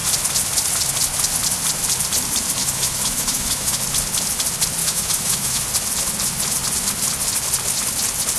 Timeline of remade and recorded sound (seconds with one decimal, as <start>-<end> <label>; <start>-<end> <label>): 0.0-2.6 recorded; 2.6-3.8 remade; 3.8-4.8 recorded; 4.8-5.6 remade; 5.6-8.4 recorded

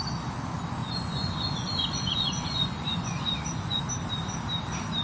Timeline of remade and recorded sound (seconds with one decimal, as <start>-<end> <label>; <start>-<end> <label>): 0.0-0.8 recorded; 0.8-3.8 remade; 3.8-5.0 recorded

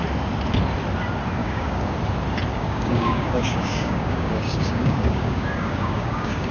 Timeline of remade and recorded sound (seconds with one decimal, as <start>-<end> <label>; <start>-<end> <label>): 0.0-1.4 recorded; 1.4-1.9 remade; 1.9-2.5 recorded; 2.5-6.5 remade

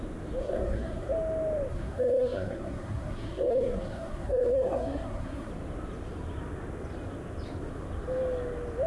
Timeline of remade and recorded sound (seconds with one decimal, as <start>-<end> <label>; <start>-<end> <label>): 0.0-0.4 recorded; 0.4-1.1 remade; 1.1-1.7 recorded; 1.7-5.5 remade; 5.5-8.9 recorded